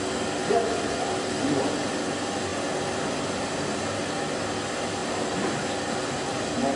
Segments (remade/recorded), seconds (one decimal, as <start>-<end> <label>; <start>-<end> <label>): 0.0-6.8 recorded